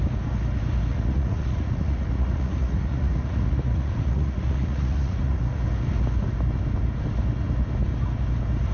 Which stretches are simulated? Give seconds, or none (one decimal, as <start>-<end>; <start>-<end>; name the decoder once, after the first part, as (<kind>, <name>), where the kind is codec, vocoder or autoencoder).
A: 0.9-5.6 (vocoder, Vocos)